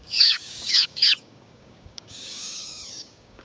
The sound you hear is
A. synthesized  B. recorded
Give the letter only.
A